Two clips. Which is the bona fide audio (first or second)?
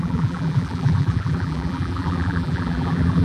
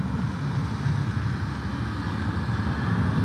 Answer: second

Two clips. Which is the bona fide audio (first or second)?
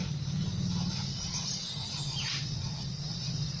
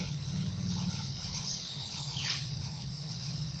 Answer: first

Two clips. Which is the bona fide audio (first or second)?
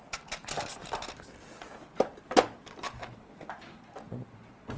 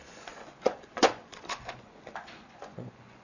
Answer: first